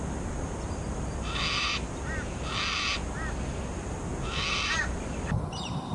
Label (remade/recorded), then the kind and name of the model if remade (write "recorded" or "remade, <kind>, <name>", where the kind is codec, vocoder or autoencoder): recorded